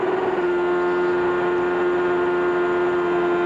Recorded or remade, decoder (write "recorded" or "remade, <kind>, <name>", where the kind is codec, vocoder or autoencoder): recorded